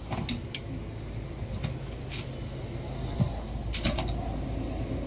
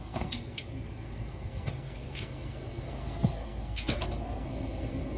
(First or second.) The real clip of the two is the first